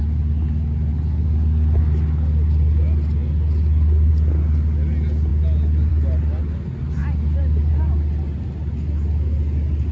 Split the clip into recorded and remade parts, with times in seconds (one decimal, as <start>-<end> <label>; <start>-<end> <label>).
0.0-9.9 recorded